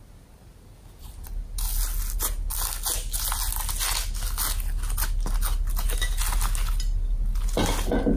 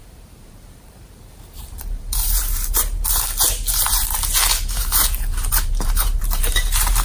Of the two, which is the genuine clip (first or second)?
first